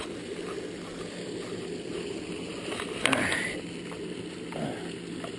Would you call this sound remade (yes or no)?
no